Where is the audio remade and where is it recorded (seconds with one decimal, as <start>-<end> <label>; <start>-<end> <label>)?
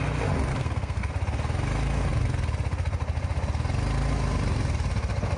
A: 0.0-0.5 recorded; 0.5-1.1 remade; 1.1-5.4 recorded